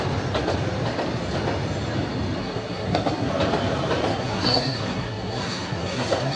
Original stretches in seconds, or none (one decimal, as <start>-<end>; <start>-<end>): 0.0-2.4; 3.3-4.1